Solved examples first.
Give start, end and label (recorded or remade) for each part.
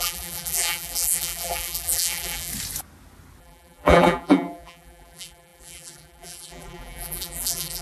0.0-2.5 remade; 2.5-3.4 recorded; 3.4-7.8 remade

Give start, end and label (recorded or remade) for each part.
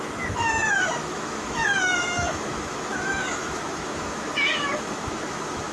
0.0-5.7 remade